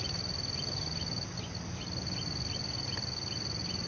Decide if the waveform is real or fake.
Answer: real